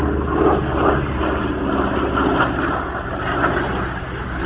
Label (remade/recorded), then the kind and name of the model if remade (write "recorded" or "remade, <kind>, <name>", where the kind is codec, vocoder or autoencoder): recorded